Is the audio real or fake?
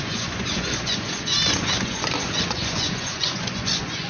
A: fake